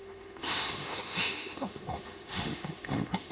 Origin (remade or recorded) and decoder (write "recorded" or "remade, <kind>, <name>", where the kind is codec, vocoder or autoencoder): remade, autoencoder, DAC-VAE